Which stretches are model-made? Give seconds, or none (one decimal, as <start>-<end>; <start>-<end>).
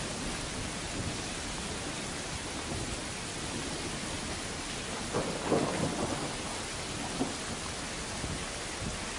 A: none